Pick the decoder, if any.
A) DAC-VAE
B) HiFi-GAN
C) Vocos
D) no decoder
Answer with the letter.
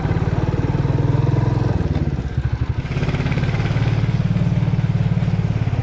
D